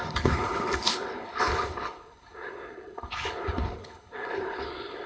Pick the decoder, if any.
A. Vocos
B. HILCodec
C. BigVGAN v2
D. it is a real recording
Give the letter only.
B